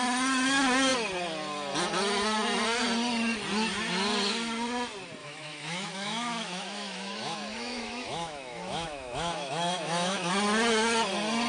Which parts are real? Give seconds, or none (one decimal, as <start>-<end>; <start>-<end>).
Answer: 0.0-5.2; 10.3-11.5